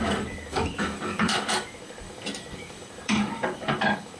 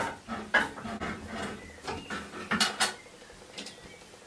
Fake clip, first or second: first